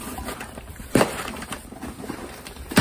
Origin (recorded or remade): remade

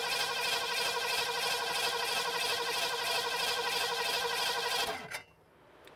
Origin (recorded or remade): recorded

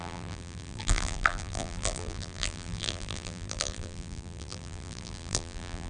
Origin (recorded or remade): remade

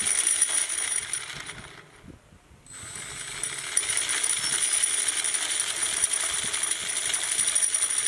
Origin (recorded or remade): recorded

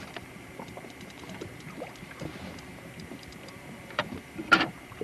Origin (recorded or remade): remade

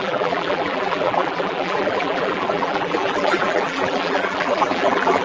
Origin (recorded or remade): remade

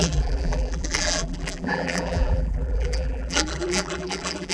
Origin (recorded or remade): remade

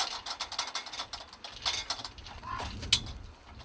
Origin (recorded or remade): recorded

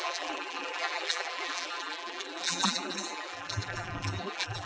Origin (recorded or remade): remade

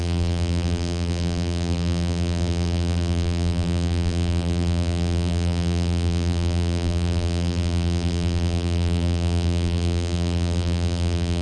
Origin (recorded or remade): remade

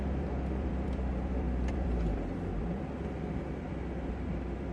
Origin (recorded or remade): remade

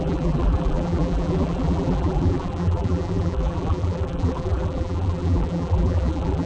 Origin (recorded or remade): remade